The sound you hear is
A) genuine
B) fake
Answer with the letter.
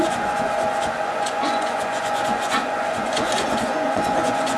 B